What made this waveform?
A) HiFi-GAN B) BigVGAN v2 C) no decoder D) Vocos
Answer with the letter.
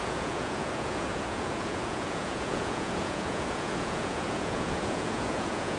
D